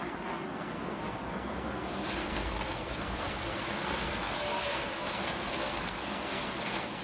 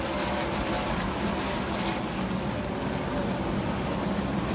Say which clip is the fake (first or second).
first